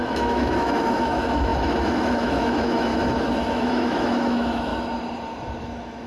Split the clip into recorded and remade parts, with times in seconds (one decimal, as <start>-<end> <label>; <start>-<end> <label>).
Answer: 0.0-2.9 remade; 2.9-3.5 recorded; 3.5-4.7 remade; 4.7-5.6 recorded; 5.6-6.1 remade